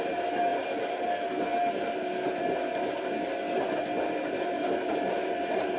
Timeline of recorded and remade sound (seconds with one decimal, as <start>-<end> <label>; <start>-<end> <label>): 0.0-5.8 recorded